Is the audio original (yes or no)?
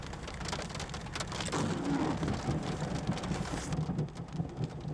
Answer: yes